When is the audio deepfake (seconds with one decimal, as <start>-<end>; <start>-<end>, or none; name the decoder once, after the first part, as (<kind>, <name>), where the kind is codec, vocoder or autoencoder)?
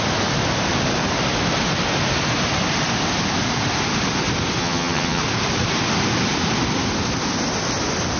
4.6-5.2 (vocoder, HiFi-GAN)